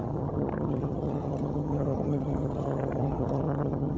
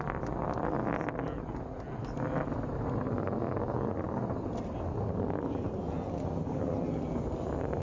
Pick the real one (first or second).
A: second